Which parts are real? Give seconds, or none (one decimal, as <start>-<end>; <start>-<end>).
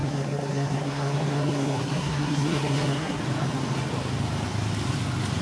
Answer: 3.2-5.4